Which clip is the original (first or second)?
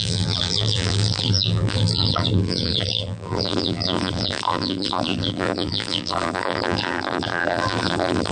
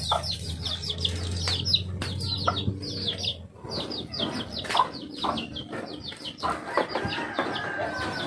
second